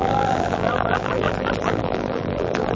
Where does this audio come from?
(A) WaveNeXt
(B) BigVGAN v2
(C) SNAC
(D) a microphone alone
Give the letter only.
B